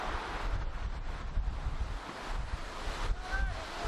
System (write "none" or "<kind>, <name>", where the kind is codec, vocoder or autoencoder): none